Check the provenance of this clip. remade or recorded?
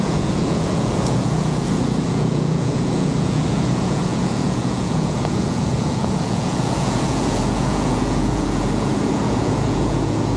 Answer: remade